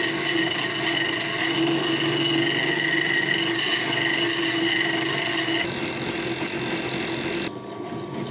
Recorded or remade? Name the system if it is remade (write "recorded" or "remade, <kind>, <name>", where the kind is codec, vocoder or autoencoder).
recorded